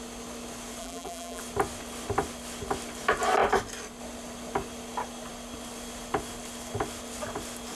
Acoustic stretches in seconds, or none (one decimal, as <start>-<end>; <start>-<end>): 0.0-0.8; 1.4-7.7

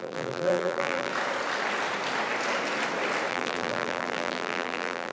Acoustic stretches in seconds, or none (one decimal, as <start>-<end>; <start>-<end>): 1.1-3.3

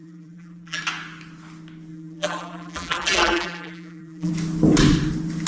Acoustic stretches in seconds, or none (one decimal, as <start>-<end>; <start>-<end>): 0.8-1.9; 4.3-5.5

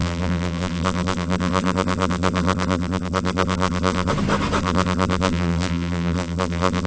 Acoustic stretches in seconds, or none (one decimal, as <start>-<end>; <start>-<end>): 4.1-4.6

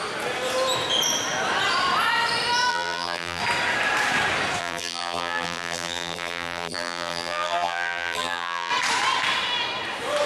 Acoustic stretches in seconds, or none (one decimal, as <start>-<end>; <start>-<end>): 0.0-2.7; 3.4-4.6; 8.7-10.3

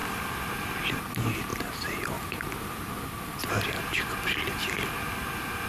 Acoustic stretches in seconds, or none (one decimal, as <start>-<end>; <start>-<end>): 0.0-5.7